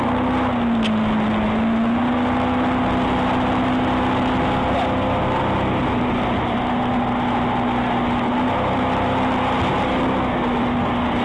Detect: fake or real real